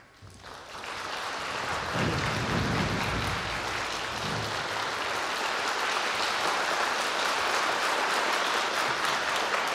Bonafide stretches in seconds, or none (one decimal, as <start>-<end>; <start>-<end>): 0.0-0.6; 1.7-9.7